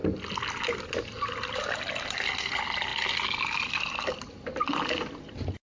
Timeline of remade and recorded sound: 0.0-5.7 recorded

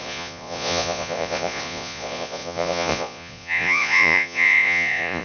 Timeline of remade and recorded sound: 0.0-5.2 remade